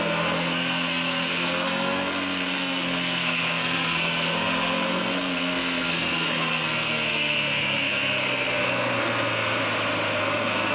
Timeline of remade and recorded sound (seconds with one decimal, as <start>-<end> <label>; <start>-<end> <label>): 0.0-9.6 remade; 9.6-10.2 recorded; 10.2-10.7 remade